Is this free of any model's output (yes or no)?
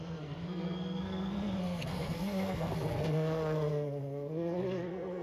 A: no